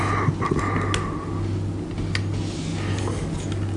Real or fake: real